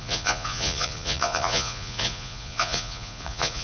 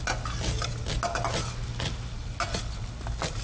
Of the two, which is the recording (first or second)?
second